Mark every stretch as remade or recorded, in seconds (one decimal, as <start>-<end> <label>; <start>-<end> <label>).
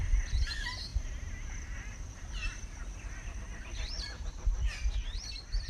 0.0-5.7 remade